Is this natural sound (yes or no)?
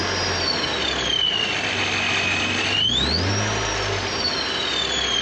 yes